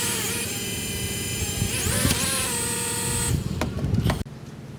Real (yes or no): yes